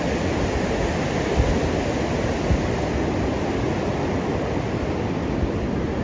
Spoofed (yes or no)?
no